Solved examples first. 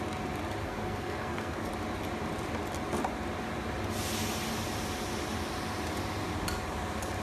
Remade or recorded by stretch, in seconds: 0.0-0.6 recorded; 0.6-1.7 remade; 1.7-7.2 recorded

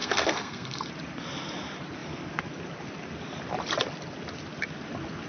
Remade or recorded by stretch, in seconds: 0.0-0.9 remade; 0.9-5.3 recorded